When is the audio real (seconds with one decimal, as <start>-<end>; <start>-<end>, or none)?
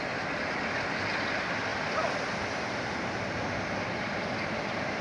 0.0-5.0